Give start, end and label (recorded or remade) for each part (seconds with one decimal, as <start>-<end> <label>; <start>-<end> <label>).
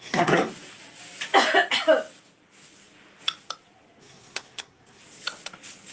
0.0-0.5 remade; 0.5-4.0 recorded; 4.0-5.0 remade; 5.0-5.9 recorded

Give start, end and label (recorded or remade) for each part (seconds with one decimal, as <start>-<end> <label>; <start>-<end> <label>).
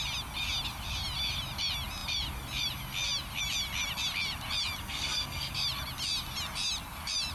0.0-4.8 recorded; 4.8-5.5 remade; 5.5-7.3 recorded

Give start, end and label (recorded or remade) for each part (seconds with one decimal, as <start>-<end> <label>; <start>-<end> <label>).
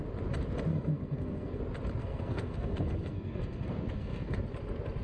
0.0-0.7 recorded; 0.7-1.6 remade; 1.6-2.0 recorded; 2.0-4.4 remade; 4.4-5.0 recorded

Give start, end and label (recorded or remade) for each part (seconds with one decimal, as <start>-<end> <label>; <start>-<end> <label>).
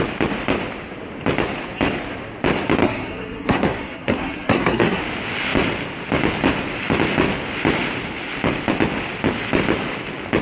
0.0-2.8 recorded; 2.8-5.0 remade; 5.0-10.4 recorded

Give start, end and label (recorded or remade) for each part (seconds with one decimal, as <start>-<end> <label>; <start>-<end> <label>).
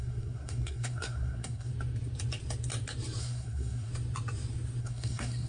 0.0-1.7 remade; 1.7-3.2 recorded; 3.2-3.9 remade; 3.9-4.8 recorded; 4.8-5.5 remade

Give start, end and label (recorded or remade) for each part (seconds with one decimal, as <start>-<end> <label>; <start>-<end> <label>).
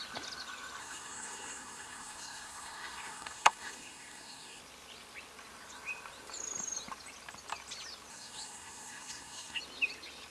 0.0-0.8 recorded; 0.8-4.6 remade; 4.6-8.1 recorded; 8.1-9.6 remade; 9.6-10.3 recorded